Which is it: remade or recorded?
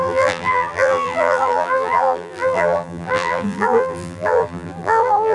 remade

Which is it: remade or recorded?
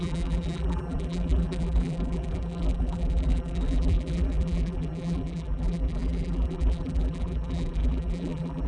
remade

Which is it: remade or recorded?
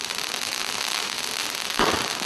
recorded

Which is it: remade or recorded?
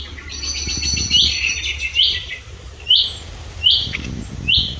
recorded